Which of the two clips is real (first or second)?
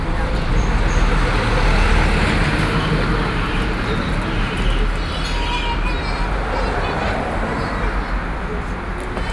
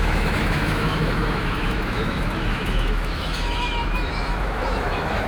first